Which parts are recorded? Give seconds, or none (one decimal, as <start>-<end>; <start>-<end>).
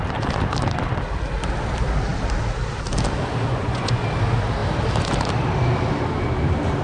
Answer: 0.0-3.5; 4.0-6.8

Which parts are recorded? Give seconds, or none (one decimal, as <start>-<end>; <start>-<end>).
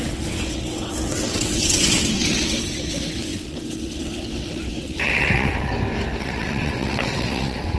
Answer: 5.7-6.2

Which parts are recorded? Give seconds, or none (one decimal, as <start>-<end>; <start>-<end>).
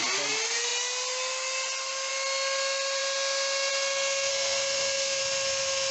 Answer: 0.0-4.3; 5.2-5.9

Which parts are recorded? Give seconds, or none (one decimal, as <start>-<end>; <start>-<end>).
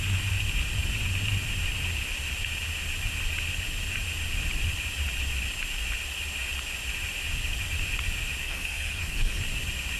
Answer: 0.0-8.4; 9.4-10.0